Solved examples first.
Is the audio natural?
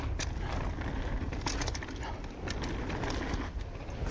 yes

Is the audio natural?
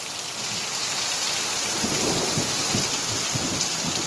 yes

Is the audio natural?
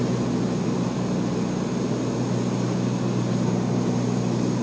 yes